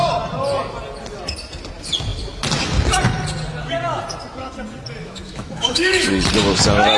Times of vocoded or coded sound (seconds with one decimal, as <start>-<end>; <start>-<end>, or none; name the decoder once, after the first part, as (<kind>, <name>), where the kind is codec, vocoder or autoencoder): 5.0-6.1 (autoencoder, DAC-VAE)